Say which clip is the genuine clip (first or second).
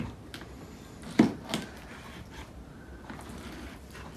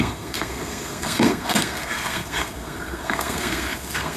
first